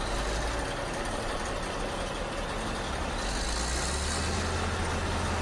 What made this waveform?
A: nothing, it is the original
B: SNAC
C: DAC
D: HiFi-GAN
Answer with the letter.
A